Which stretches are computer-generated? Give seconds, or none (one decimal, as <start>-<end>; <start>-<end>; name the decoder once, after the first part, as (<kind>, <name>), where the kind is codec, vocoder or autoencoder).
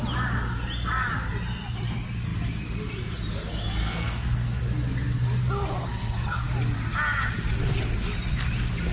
3.8-4.6 (codec, SNAC); 5.8-6.4